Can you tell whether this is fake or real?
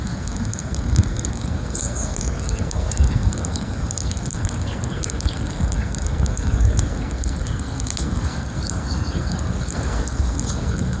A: fake